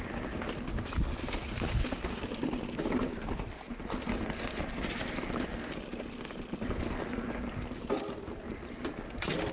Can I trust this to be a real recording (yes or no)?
yes